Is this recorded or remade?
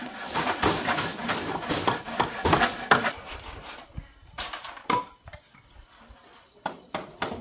remade